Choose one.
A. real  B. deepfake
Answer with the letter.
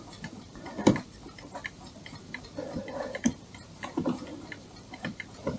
B